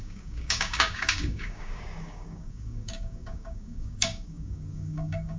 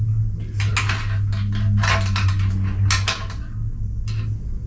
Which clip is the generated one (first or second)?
first